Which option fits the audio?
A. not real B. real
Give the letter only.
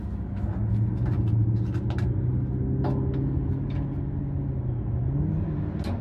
B